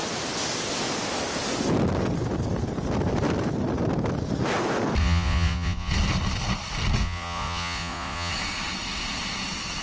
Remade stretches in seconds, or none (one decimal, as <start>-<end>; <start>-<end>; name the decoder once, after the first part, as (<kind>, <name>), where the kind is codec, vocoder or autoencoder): 5.0-5.9 (vocoder, Vocos); 7.0-8.3